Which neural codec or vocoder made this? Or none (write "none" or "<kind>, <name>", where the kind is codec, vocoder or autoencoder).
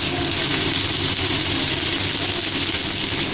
none